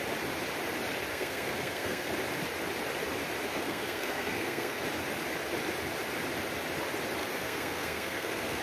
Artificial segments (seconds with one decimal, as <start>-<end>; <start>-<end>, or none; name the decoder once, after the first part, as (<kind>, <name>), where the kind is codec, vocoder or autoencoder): 1.1-2.1 (codec, SNAC); 3.5-4.8; 7.2-8.6